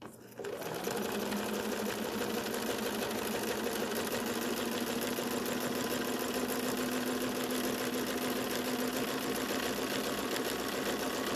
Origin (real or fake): real